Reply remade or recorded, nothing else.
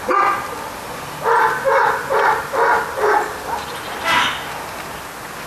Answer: recorded